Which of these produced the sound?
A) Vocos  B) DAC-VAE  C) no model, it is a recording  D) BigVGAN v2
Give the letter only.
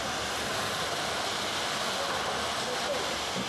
C